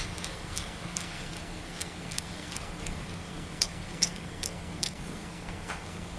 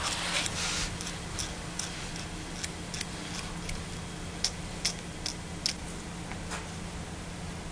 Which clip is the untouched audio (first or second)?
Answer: second